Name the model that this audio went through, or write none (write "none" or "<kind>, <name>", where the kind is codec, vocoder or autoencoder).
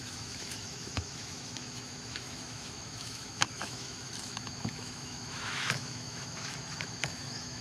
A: autoencoder, DAC-VAE